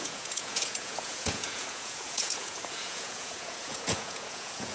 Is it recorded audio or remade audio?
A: remade